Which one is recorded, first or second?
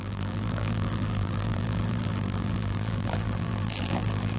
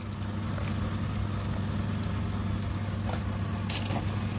second